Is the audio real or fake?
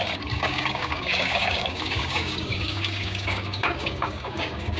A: fake